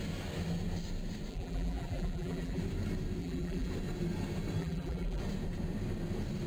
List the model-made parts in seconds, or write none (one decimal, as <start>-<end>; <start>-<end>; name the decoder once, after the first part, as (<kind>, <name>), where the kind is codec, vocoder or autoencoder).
1.3-2.6 (vocoder, BigVGAN v2); 3.2-3.7; 4.6-5.2